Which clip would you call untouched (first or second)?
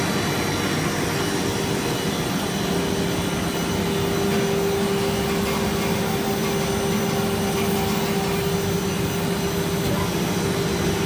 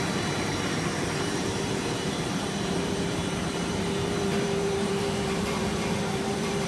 first